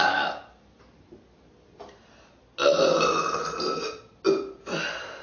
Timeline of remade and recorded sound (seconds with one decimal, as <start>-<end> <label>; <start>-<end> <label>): 0.0-5.2 recorded